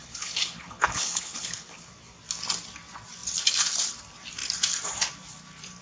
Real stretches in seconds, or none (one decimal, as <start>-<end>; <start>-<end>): 1.9-5.8